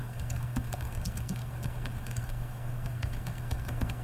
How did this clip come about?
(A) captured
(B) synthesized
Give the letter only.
B